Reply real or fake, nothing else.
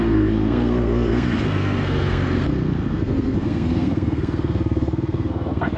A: fake